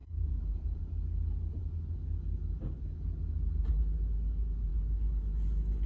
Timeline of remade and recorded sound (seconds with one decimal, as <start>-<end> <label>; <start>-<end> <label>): 0.0-0.8 remade; 0.8-5.9 recorded